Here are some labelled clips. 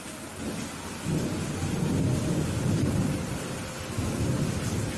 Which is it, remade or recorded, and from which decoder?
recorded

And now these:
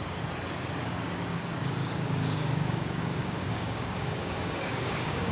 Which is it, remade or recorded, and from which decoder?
remade, codec, DAC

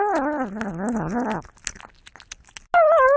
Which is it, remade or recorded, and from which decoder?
recorded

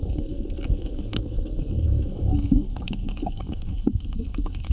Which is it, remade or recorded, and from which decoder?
remade, codec, SNAC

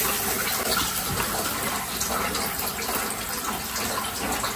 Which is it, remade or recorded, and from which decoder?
recorded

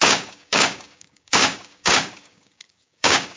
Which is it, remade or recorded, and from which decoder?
remade, codec, DAC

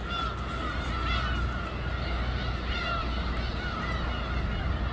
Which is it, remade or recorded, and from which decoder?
recorded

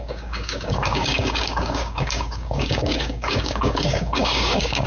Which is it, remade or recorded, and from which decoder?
remade, codec, DAC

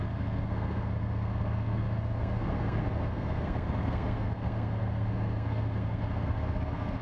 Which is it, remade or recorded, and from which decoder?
remade, codec, SNAC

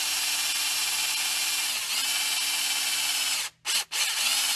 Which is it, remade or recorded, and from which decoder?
recorded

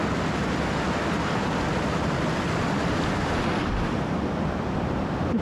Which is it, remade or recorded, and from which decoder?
recorded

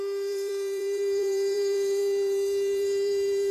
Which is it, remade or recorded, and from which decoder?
remade, vocoder, BigVGAN v2